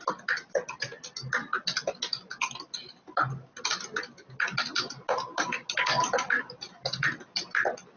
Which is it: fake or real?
real